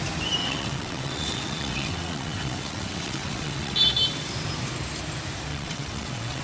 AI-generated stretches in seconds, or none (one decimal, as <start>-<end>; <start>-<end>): 0.4-3.8; 5.5-6.4